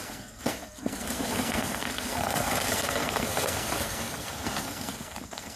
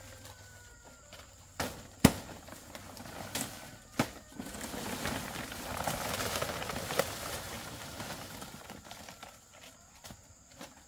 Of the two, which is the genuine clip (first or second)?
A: second